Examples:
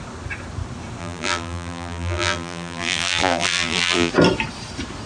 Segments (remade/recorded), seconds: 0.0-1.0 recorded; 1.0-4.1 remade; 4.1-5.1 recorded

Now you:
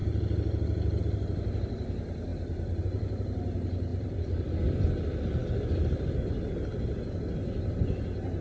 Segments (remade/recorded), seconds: 0.0-3.9 recorded; 3.9-4.8 remade; 4.8-5.4 recorded; 5.4-6.3 remade; 6.3-8.4 recorded

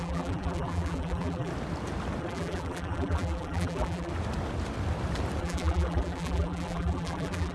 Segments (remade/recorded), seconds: 0.0-1.5 remade; 1.5-2.2 recorded; 2.2-4.1 remade; 4.1-5.4 recorded; 5.4-7.5 remade

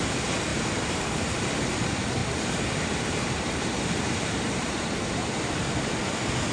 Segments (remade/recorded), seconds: 0.0-0.5 recorded; 0.5-1.5 remade; 1.5-2.2 recorded; 2.2-5.5 remade; 5.5-6.5 recorded

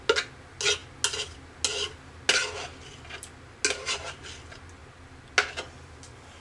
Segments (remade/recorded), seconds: 0.0-6.4 recorded